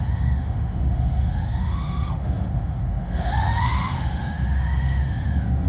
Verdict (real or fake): fake